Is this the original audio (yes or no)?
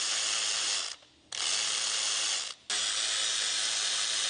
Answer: yes